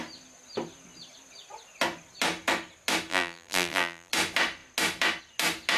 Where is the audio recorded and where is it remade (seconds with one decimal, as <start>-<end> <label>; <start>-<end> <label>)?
0.0-3.1 recorded; 3.1-4.1 remade; 4.1-5.8 recorded